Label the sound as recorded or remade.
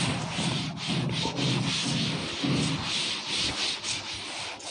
recorded